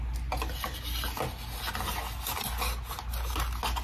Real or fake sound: real